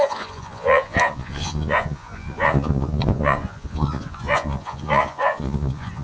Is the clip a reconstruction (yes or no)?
yes